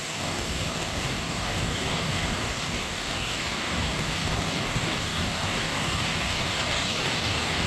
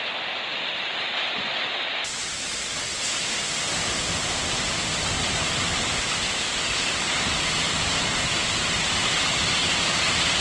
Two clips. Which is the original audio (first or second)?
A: second